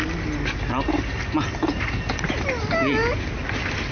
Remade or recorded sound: recorded